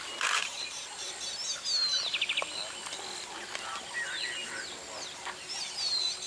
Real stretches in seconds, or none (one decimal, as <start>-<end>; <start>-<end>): 0.0-0.4; 1.0-6.3